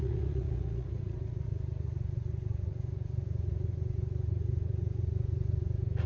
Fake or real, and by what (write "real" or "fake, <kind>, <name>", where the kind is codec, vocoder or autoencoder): fake, vocoder, Vocos